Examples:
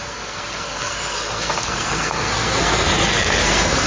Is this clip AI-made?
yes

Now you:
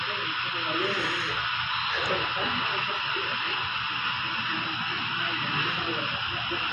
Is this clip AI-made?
no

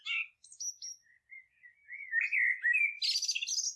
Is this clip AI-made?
no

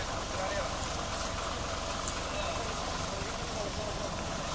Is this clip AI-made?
no